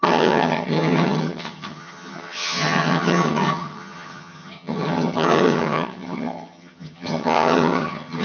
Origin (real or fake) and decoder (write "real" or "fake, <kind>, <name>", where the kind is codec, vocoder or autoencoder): fake, vocoder, HiFi-GAN